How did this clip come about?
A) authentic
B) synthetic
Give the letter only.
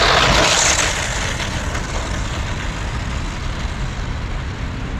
A